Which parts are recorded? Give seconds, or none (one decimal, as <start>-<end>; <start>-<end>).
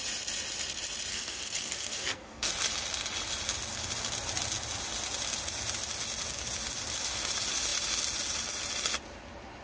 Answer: 0.0-1.1; 2.5-9.6